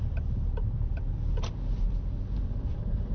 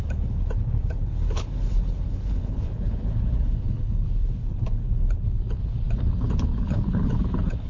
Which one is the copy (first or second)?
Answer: second